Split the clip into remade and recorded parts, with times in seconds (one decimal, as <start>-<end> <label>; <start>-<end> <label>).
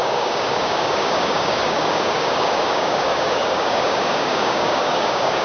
0.0-5.4 remade